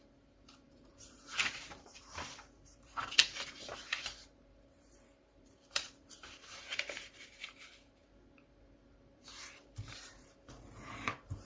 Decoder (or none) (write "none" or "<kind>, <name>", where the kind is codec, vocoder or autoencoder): vocoder, BigVGAN v2